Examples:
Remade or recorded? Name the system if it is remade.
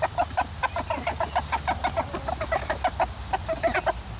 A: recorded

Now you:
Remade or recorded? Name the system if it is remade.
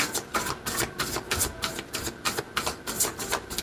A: recorded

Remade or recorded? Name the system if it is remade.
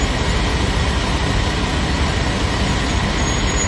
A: recorded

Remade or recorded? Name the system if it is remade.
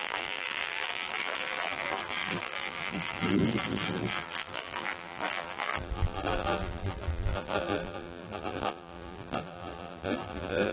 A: remade, vocoder, BigVGAN v2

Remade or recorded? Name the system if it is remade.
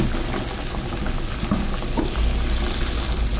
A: recorded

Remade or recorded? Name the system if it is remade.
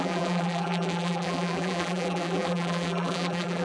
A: remade, vocoder, BigVGAN v2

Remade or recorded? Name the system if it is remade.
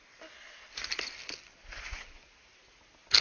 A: recorded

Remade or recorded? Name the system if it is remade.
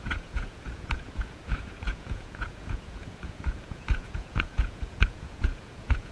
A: remade, vocoder, Vocos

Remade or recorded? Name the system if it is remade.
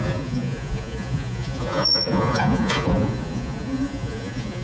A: remade, vocoder, Vocos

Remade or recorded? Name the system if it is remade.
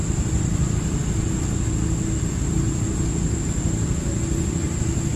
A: recorded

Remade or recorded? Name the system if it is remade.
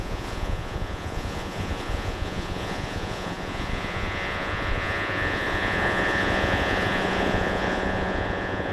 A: remade, vocoder, Vocos